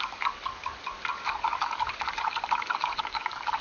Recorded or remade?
remade